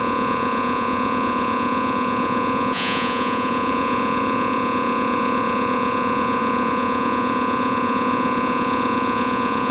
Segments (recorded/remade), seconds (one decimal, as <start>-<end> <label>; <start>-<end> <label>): 0.0-9.7 remade